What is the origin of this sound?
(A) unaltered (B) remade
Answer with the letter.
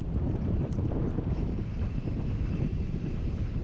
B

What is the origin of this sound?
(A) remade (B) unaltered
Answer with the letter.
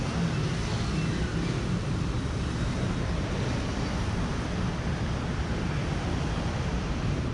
B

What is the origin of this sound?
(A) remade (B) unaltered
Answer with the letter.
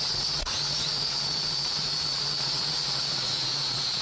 A